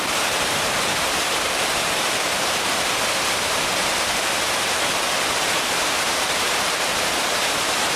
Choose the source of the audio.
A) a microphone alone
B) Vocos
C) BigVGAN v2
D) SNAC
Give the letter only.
C